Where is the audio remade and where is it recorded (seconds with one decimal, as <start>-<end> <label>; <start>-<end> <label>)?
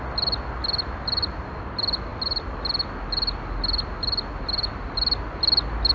0.0-5.9 recorded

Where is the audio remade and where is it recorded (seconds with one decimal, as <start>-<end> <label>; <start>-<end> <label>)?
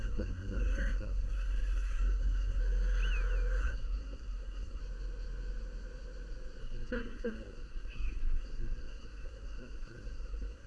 0.0-2.6 remade; 2.6-3.6 recorded; 3.6-4.8 remade; 4.8-6.6 recorded; 6.6-10.7 remade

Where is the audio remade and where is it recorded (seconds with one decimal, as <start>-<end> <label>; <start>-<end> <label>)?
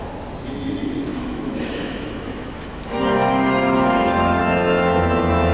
0.0-1.1 recorded; 1.1-4.4 remade; 4.4-5.5 recorded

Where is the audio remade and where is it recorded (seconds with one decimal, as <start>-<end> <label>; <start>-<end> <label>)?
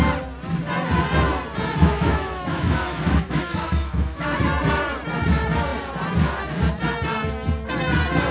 0.0-1.8 recorded; 1.8-4.4 remade; 4.4-8.3 recorded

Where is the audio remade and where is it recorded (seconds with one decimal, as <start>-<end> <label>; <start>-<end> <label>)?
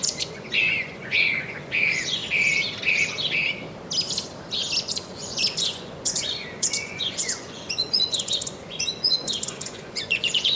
0.0-2.2 remade; 2.2-4.8 recorded; 4.8-10.5 remade